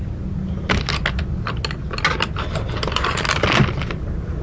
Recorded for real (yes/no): yes